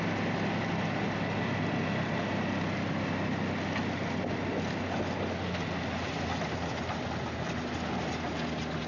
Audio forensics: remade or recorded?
recorded